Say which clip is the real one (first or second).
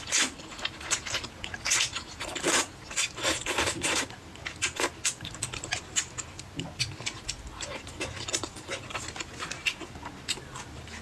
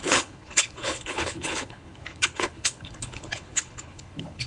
first